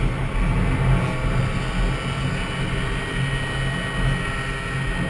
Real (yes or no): yes